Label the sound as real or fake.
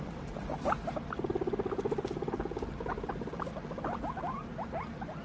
real